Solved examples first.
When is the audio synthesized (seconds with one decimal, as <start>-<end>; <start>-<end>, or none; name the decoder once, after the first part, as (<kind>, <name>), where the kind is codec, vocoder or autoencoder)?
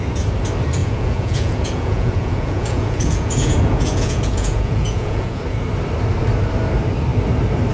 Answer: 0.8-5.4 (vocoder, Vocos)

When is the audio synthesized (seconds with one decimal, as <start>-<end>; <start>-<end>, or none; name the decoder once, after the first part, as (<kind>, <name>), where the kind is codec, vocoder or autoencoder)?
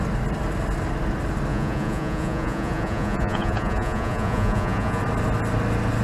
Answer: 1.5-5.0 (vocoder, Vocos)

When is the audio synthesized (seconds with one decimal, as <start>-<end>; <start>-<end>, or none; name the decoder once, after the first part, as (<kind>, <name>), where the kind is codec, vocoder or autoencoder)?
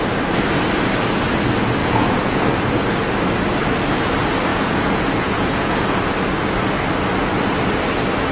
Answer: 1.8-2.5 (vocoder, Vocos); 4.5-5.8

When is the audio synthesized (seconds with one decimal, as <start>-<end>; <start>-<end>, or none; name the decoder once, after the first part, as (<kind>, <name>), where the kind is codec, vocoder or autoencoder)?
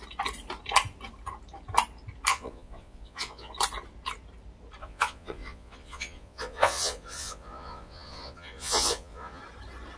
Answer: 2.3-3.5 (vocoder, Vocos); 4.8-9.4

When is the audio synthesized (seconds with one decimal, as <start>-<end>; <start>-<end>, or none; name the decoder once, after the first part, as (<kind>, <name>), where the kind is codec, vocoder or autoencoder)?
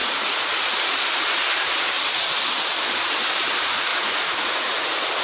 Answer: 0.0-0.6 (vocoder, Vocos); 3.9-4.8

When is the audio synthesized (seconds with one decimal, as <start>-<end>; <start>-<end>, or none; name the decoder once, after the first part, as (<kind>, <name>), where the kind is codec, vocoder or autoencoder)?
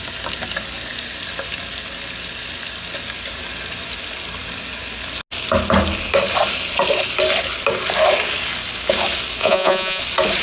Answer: 9.4-10.0 (vocoder, Vocos)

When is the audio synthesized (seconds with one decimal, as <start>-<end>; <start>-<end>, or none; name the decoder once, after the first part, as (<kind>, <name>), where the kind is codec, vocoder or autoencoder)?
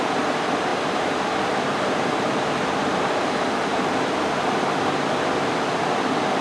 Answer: none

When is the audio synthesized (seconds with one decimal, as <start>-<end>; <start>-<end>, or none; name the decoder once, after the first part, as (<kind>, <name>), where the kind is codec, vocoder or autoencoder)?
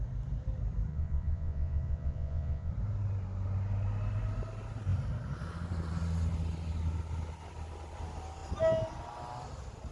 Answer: 0.9-2.7 (vocoder, Vocos)